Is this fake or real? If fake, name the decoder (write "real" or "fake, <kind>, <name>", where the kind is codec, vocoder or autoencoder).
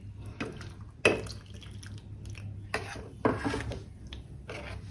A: real